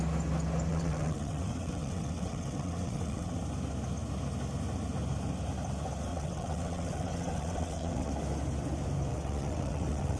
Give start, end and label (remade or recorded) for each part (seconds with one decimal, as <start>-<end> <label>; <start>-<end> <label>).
0.0-0.7 recorded; 0.7-3.4 remade; 3.4-6.1 recorded; 6.1-8.1 remade; 8.1-9.1 recorded; 9.1-10.2 remade